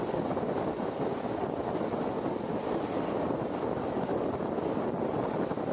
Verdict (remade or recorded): recorded